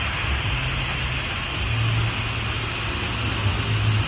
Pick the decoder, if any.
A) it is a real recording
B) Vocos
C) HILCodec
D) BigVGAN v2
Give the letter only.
A